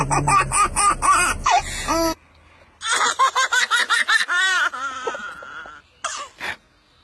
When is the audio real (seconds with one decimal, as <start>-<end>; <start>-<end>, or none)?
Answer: 0.0-3.8; 5.1-7.0